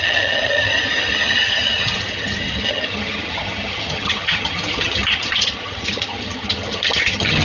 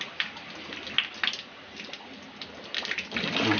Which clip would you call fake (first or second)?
first